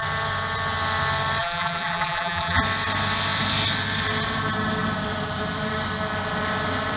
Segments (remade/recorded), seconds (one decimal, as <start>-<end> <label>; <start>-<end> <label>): 0.0-1.4 recorded; 1.4-2.6 remade; 2.6-7.0 recorded